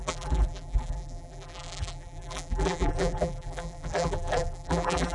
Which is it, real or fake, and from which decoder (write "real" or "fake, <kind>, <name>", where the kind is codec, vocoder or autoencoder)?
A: fake, vocoder, BigVGAN v2